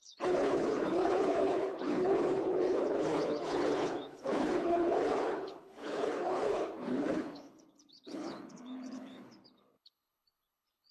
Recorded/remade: remade